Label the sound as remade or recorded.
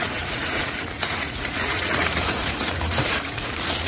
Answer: remade